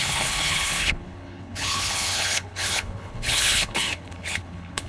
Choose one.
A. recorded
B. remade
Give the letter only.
B